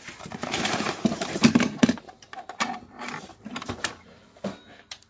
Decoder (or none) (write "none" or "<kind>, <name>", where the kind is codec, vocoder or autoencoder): vocoder, BigVGAN v2